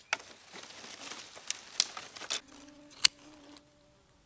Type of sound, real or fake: real